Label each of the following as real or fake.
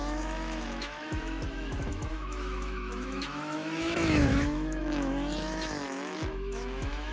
fake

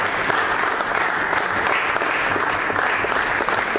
real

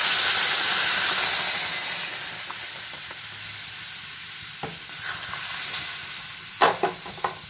real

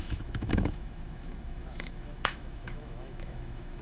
fake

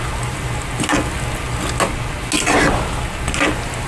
real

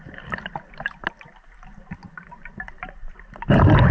real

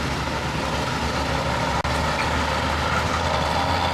real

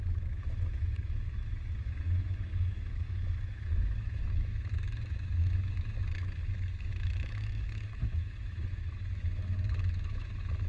fake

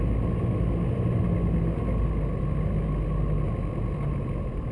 real